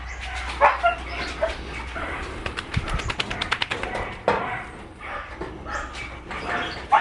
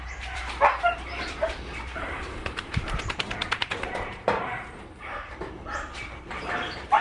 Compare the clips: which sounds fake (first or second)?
second